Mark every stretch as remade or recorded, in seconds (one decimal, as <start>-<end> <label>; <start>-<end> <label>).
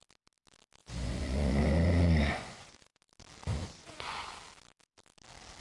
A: 0.0-0.8 recorded; 0.8-3.0 remade; 3.0-3.6 recorded; 3.6-4.3 remade; 4.3-5.6 recorded